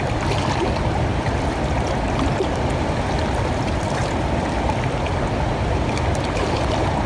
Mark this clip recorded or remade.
recorded